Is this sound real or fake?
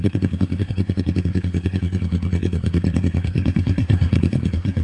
fake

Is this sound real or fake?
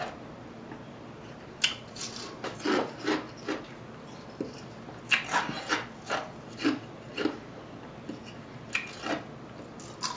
real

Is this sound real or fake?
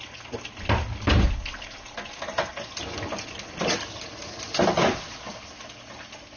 real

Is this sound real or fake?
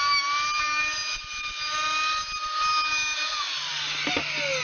real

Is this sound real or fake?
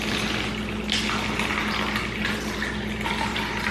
real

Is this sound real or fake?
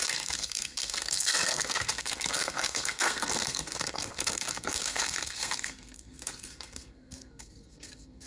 fake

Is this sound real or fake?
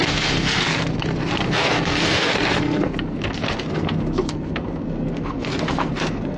fake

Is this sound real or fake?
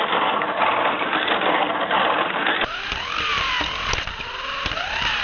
real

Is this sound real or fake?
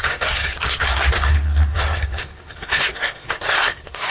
fake